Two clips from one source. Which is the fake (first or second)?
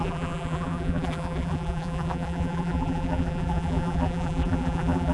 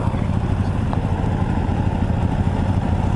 first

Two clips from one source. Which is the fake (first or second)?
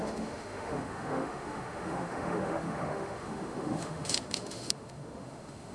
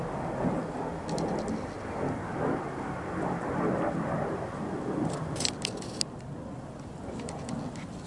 first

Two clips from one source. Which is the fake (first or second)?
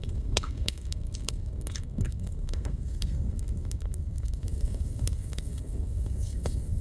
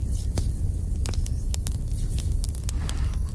first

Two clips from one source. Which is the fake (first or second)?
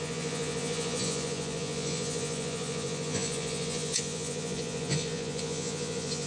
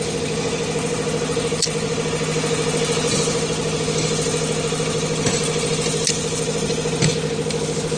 first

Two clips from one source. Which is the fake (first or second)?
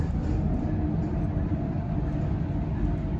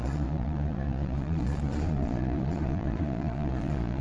second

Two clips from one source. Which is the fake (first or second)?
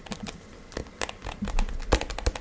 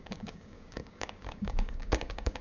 second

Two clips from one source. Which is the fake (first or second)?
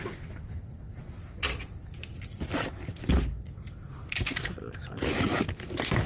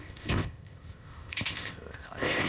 second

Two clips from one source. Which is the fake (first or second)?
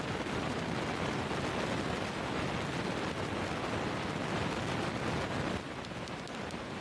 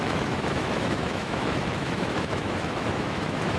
second